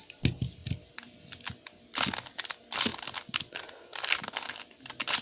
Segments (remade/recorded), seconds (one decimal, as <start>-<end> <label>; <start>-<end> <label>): 0.0-5.2 recorded